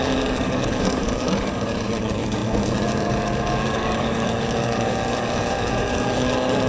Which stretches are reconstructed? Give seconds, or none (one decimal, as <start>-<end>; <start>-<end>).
0.0-6.7